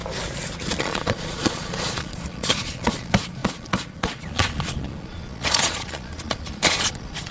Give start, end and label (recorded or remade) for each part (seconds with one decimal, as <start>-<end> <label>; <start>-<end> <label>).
0.0-0.8 recorded; 0.8-7.3 remade